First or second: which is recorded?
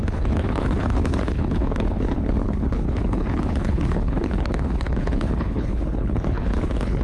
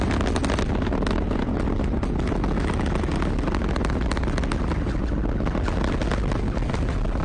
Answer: second